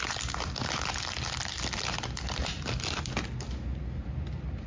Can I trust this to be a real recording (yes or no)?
yes